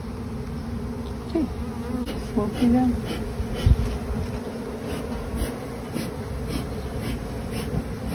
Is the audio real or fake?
real